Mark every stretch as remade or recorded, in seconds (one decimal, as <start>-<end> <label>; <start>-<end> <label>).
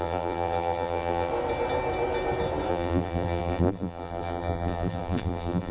0.0-1.3 remade; 1.3-2.7 recorded; 2.7-5.7 remade